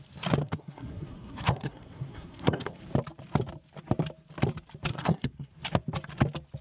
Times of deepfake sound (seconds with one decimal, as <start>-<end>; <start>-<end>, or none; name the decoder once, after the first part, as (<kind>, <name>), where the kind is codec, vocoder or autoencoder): 0.4-2.8 (codec, SNAC); 4.9-5.5